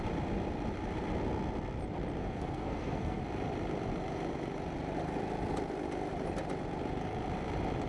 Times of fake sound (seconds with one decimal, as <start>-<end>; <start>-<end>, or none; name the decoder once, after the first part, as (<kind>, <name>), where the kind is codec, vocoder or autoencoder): 2.2-3.2 (codec, SNAC)